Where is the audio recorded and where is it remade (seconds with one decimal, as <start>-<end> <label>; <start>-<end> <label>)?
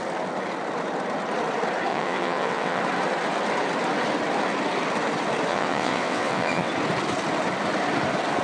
0.0-1.9 recorded; 1.9-2.8 remade; 2.8-5.5 recorded; 5.5-6.7 remade; 6.7-8.4 recorded